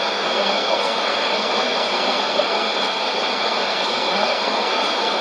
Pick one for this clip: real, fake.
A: fake